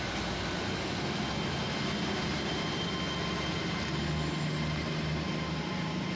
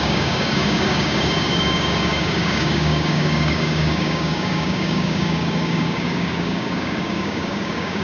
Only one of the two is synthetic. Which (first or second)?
second